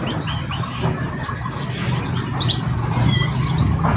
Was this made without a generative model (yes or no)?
yes